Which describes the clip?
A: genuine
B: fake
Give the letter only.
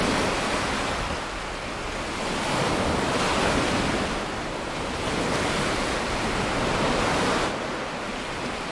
A